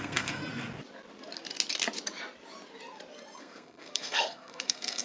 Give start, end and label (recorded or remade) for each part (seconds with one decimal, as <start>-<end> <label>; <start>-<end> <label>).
0.0-0.4 remade; 0.4-3.4 recorded; 3.4-5.0 remade